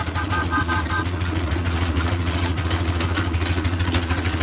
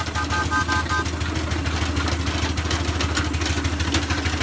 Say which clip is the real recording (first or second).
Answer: second